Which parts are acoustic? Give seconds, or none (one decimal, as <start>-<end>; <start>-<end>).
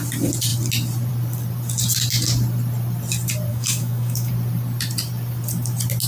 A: 0.0-3.5; 4.3-6.1